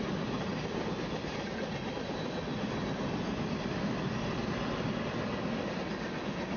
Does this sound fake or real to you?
real